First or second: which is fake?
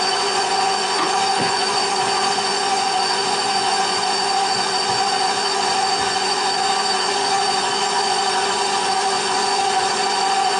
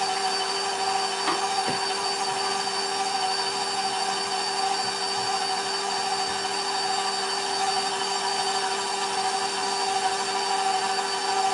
first